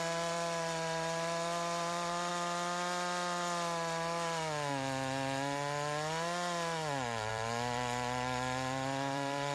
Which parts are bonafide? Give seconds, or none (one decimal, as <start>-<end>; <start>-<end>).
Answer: 2.3-7.3